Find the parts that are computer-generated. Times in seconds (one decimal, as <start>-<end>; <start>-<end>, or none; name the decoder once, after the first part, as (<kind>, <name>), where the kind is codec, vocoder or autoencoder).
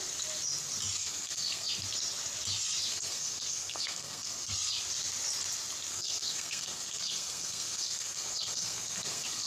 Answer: 1.0-1.7 (codec, SNAC); 2.9-4.5; 5.9-9.5